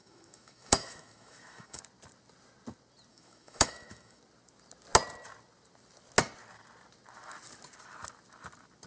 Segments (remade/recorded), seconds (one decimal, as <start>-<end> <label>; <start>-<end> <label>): 0.0-1.8 remade; 1.8-3.1 recorded; 3.1-4.2 remade; 4.2-8.9 recorded